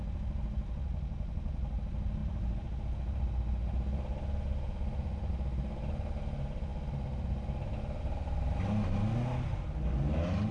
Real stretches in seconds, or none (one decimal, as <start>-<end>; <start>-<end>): 0.0-10.5